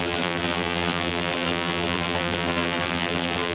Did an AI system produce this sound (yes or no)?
yes